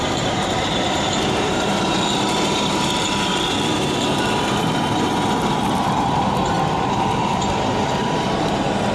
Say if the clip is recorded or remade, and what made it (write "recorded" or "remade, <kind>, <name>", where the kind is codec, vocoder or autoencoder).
remade, vocoder, BigVGAN v2